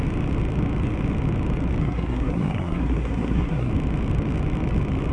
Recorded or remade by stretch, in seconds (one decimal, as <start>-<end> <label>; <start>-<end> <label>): 0.0-1.8 recorded; 1.8-3.7 remade; 3.7-5.1 recorded